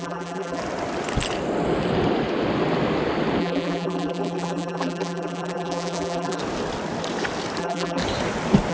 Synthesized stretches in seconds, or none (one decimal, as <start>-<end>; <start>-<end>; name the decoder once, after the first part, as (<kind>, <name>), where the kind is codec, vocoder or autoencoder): 0.0-0.6 (vocoder, BigVGAN v2); 3.4-6.4; 7.6-8.0